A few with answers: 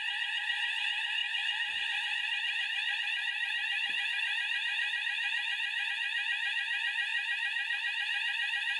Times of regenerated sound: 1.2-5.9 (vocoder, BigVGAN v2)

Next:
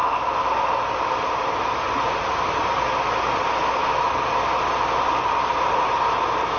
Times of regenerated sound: none

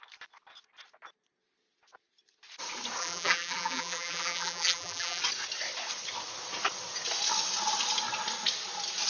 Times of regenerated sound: 3.0-5.2 (vocoder, BigVGAN v2)

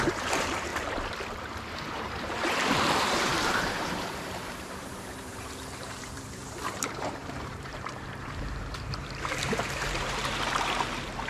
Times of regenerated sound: 0.0-0.7 (vocoder, BigVGAN v2); 1.3-11.3

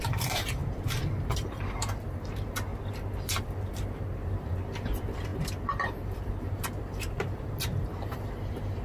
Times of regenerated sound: 0.0-0.6 (vocoder, BigVGAN v2); 1.2-2.7; 4.0-8.8

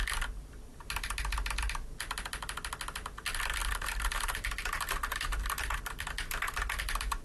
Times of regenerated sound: 0.7-1.8 (vocoder, BigVGAN v2); 3.6-5.8